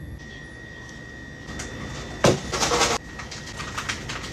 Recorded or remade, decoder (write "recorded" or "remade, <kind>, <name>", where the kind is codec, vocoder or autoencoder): recorded